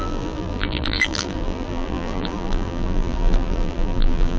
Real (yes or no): no